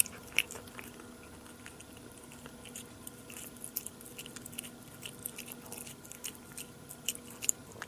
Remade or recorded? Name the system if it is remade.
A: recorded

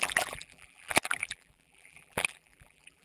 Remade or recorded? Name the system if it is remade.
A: remade, vocoder, BigVGAN v2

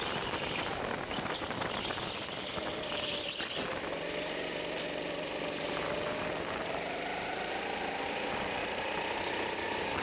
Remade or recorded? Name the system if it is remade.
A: recorded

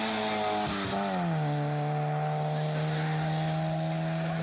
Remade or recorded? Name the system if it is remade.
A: recorded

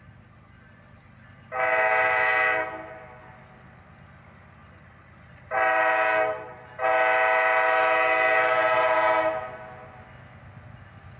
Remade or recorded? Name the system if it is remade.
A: recorded